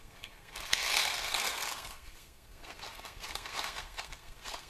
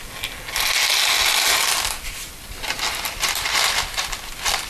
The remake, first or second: first